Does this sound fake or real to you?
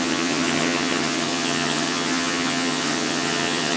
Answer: fake